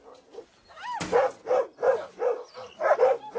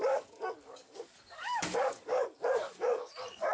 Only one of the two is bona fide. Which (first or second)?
first